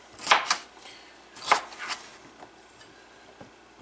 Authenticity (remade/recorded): recorded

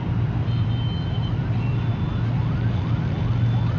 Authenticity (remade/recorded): recorded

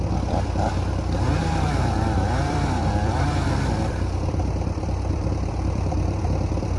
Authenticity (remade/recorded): remade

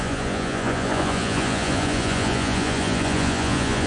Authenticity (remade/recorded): remade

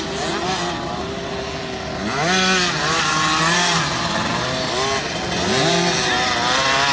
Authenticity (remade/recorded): recorded